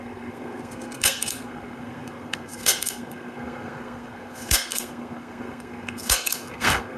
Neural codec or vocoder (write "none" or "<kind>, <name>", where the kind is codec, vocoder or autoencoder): codec, SNAC